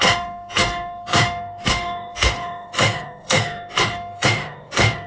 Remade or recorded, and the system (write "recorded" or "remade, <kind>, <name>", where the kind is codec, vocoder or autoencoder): remade, autoencoder, DAC-VAE